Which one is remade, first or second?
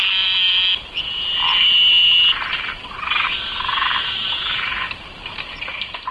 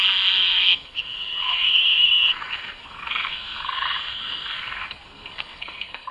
second